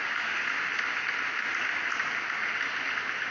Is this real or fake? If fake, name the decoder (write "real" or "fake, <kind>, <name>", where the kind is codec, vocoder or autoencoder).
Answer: real